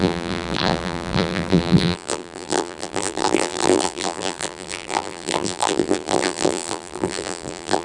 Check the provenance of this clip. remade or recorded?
remade